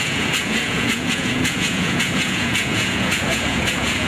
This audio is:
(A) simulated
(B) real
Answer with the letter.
A